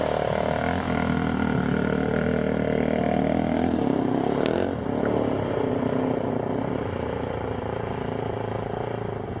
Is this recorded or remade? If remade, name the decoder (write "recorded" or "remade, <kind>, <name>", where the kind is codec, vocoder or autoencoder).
recorded